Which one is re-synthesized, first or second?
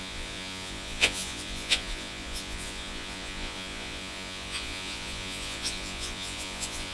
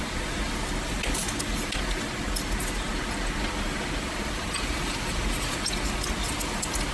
first